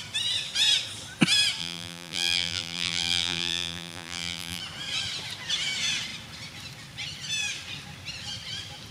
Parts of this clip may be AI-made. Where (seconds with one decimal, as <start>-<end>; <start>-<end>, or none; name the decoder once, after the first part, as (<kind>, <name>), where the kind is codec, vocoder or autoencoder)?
1.6-4.6 (vocoder, BigVGAN v2)